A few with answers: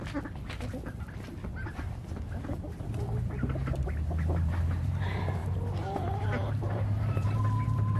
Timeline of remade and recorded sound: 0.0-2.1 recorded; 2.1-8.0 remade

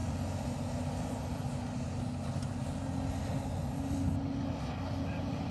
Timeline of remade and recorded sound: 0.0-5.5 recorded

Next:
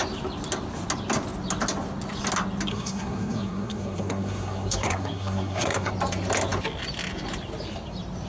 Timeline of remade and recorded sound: 0.0-2.7 recorded; 2.7-5.9 remade; 5.9-8.3 recorded

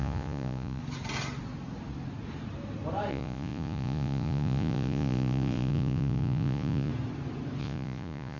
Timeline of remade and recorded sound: 0.0-0.8 remade; 0.8-3.1 recorded; 3.1-6.9 remade; 6.9-7.6 recorded; 7.6-8.4 remade